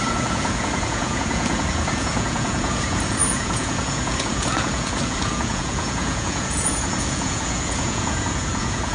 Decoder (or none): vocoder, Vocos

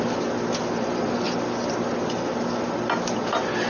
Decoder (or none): none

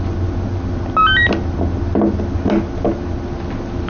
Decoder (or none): none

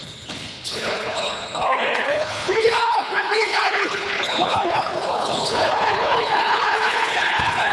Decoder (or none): codec, HILCodec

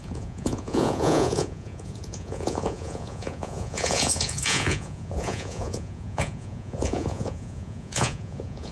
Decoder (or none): vocoder, Vocos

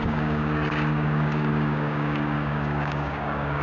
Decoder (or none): codec, DAC